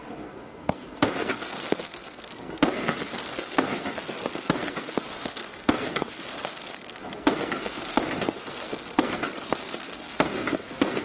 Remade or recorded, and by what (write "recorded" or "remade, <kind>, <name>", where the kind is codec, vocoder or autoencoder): remade, codec, SNAC